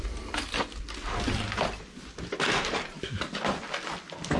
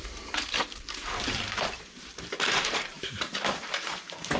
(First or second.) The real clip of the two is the first